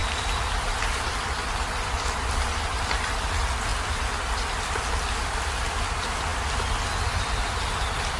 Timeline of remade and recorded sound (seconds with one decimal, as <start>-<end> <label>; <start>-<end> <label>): 0.0-8.2 recorded

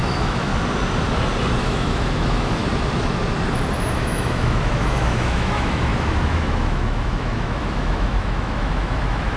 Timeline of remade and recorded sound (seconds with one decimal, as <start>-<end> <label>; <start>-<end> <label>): 0.0-0.5 remade; 0.5-1.6 recorded; 1.6-2.6 remade; 2.6-3.9 recorded; 3.9-9.4 remade

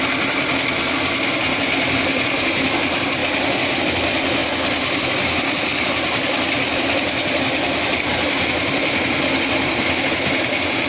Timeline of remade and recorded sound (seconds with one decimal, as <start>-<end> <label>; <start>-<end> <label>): 0.0-3.2 recorded; 3.2-3.8 remade; 3.8-5.7 recorded; 5.7-9.9 remade; 9.9-10.9 recorded

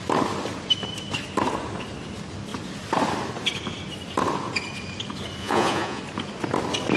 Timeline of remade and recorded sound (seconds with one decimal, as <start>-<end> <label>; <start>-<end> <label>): 0.0-5.4 recorded; 5.4-6.0 remade; 6.0-7.0 recorded